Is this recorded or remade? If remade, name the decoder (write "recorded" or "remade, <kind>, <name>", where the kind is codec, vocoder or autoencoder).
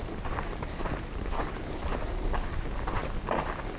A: recorded